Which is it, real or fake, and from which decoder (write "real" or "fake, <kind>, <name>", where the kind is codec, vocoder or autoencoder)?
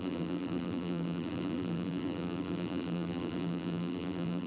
fake, vocoder, BigVGAN v2